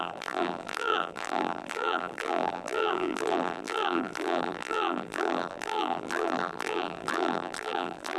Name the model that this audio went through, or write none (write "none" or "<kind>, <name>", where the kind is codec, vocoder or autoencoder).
vocoder, BigVGAN v2